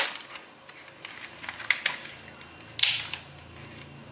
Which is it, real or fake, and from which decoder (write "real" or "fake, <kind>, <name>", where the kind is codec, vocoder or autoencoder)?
real